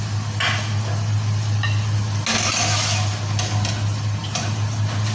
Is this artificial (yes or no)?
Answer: no